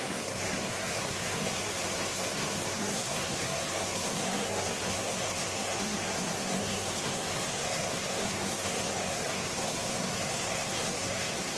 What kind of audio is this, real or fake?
fake